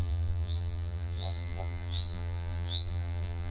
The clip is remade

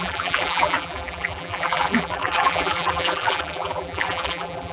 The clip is remade